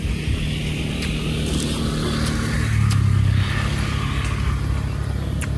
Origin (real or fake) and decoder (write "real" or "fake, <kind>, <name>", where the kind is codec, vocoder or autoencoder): real